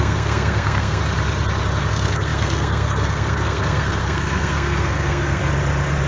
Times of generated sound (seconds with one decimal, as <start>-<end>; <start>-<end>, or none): 0.0-1.0; 1.9-5.4